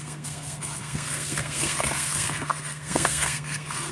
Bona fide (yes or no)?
no